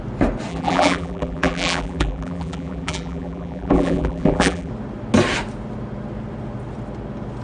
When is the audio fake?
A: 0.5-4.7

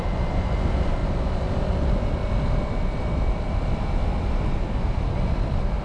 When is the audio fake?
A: 1.0-4.3

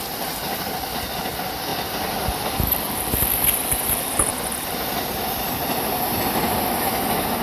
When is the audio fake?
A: none

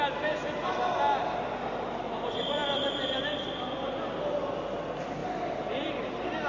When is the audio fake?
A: 2.6-3.4; 5.2-6.5

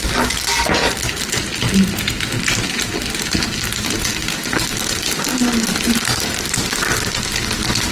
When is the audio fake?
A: 5.3-6.0

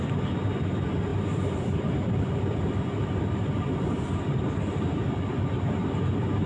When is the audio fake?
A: 1.1-4.1